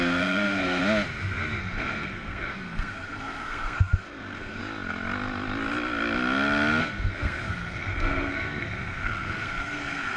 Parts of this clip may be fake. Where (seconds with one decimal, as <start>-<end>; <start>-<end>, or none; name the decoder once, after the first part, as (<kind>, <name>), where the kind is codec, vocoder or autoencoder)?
0.0-0.8 (codec, SNAC); 1.6-4.6; 6.8-10.2